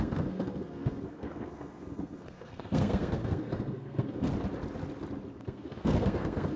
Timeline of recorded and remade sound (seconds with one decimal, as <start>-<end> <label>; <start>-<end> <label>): 0.0-4.3 remade; 4.3-5.4 recorded; 5.4-6.6 remade